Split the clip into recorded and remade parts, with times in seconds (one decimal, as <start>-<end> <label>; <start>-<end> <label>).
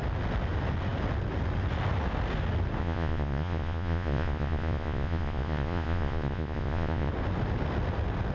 0.0-2.8 recorded; 2.8-7.1 remade; 7.1-8.3 recorded